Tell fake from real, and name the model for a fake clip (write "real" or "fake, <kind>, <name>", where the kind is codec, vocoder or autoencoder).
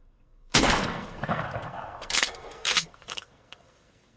fake, codec, SNAC